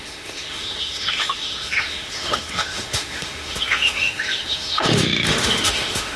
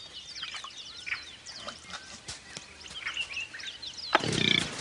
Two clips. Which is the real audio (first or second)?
second